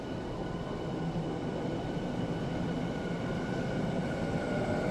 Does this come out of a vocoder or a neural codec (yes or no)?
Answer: no